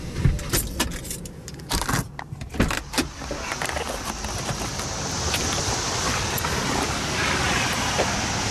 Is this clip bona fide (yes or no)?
yes